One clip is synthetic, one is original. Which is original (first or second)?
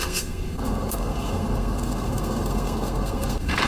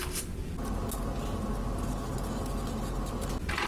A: second